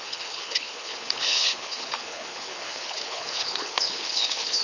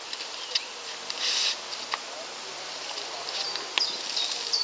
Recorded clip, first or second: second